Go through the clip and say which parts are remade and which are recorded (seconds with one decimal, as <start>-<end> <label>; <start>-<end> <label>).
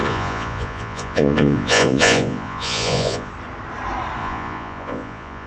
0.0-3.3 remade; 3.3-4.2 recorded; 4.2-5.5 remade